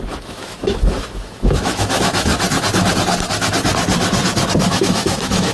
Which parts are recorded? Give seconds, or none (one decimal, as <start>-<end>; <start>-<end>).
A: 2.3-4.6